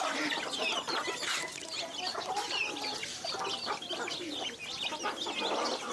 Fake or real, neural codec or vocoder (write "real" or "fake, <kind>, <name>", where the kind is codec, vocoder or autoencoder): real